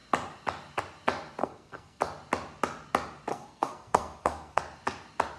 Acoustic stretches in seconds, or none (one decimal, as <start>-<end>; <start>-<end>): 0.0-1.4; 2.0-3.3; 4.6-5.4